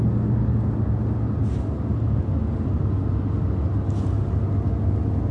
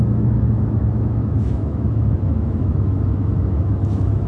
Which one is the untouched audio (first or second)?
first